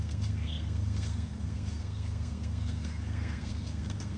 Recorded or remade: remade